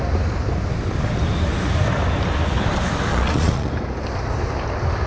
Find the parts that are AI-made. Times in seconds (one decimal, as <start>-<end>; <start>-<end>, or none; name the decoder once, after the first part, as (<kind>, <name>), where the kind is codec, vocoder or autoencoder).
3.1-3.7 (vocoder, Vocos)

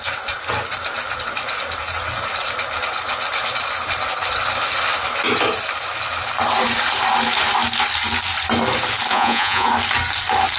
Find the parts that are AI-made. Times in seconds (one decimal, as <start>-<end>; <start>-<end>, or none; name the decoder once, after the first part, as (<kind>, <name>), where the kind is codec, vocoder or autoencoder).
9.1-9.7 (vocoder, Vocos)

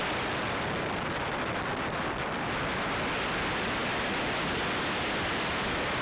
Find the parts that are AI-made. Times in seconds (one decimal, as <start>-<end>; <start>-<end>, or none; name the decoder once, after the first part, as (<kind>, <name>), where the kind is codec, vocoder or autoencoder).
0.0-2.2 (vocoder, BigVGAN v2)

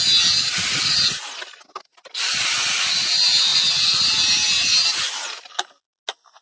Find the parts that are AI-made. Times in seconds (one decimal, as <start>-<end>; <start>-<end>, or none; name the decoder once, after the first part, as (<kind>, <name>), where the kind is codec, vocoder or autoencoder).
none

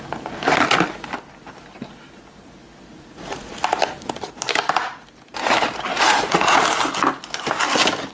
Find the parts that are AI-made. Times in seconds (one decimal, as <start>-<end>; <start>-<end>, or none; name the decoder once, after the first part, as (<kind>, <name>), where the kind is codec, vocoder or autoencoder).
2.9-3.5 (vocoder, Vocos); 5.9-6.6

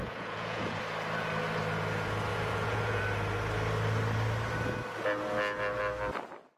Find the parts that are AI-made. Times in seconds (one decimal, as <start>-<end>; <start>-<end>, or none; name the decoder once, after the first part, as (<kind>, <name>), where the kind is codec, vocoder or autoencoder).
0.0-0.8 (vocoder, Vocos); 2.3-3.0

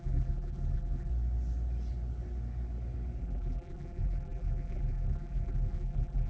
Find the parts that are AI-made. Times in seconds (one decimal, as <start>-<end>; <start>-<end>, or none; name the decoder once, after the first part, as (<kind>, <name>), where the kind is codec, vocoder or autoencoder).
0.0-1.1 (vocoder, BigVGAN v2); 3.2-6.3